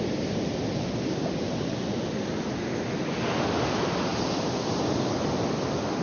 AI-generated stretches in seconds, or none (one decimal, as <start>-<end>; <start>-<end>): none